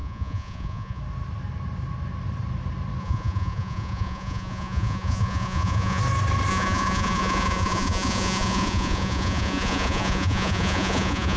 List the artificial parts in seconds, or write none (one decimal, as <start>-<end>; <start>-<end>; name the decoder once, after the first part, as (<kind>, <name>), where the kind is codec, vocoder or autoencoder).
0.0-1.0 (vocoder, Vocos); 3.0-6.0; 6.5-11.4